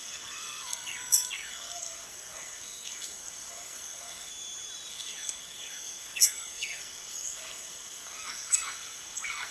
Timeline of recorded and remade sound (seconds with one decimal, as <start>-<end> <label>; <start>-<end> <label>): 0.0-4.3 remade; 4.3-4.9 recorded; 4.9-9.5 remade